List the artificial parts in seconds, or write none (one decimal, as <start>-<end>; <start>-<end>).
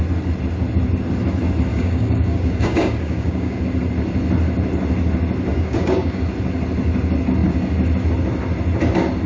1.7-3.6; 5.5-6.2